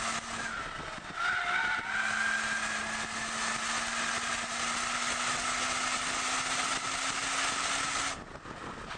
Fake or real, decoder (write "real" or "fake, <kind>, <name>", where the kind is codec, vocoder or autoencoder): real